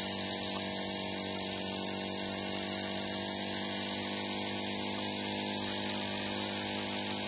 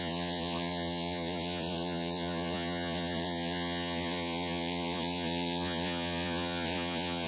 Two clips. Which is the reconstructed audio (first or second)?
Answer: second